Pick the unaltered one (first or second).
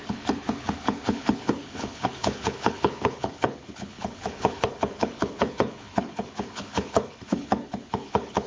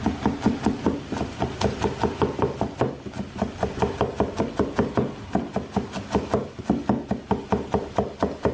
second